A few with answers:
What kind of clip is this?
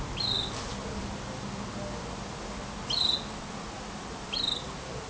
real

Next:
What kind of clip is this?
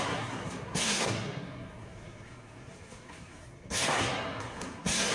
fake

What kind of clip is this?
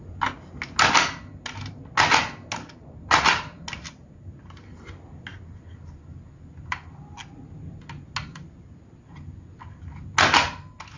real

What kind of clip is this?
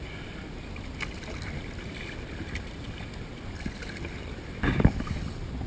real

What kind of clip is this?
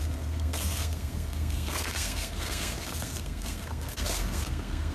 fake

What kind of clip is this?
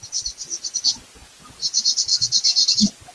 real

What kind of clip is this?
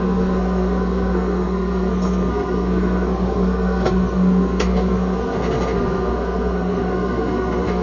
fake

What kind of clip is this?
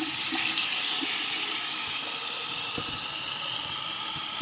real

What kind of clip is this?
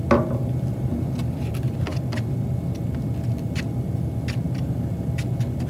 real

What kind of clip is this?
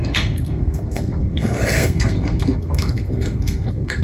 fake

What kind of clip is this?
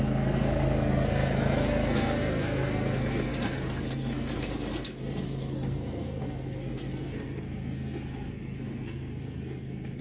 fake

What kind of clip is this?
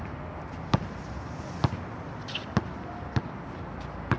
real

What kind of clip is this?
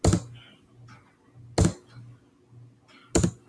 real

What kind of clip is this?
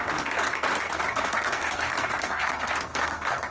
fake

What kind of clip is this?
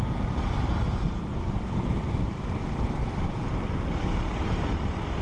real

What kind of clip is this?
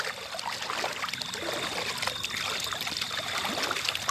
real